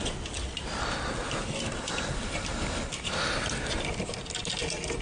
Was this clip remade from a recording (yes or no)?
no